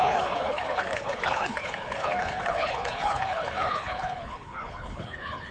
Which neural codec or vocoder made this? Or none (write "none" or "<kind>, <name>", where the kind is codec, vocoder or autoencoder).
codec, HILCodec